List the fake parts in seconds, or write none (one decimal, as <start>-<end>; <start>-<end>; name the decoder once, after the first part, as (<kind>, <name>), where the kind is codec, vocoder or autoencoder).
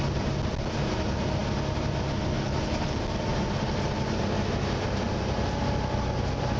none